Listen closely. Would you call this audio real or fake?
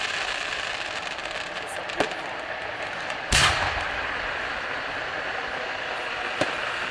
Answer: fake